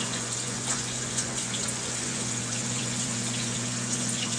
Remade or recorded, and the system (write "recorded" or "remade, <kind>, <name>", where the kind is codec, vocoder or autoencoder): remade, vocoder, Vocos